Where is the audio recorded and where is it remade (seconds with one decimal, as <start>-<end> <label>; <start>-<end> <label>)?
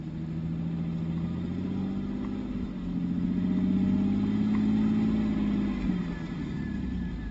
0.0-7.3 recorded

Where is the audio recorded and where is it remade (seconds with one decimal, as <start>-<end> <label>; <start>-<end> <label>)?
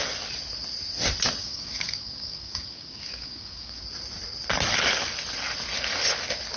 0.0-1.4 recorded; 1.4-3.8 remade; 3.8-6.6 recorded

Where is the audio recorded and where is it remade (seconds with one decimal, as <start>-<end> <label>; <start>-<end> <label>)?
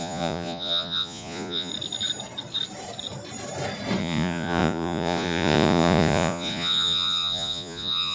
0.0-1.7 remade; 1.7-4.0 recorded; 4.0-8.1 remade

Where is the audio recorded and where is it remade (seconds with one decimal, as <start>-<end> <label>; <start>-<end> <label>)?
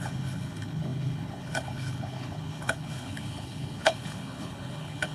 0.0-5.1 remade